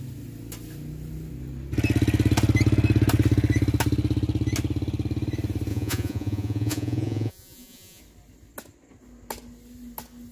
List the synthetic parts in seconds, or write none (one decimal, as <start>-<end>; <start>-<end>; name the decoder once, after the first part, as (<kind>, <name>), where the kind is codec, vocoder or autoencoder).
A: 5.7-8.0 (vocoder, Vocos)